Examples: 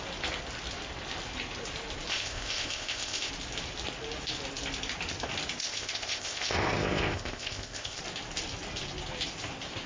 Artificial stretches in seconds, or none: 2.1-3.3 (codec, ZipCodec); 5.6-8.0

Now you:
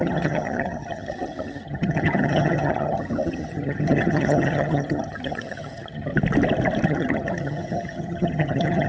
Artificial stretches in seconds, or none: 0.0-6.1 (vocoder, HiFi-GAN); 6.9-8.9

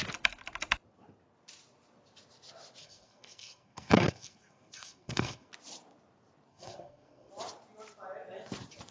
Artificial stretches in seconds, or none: 2.8-5.5 (codec, SNAC); 6.5-7.3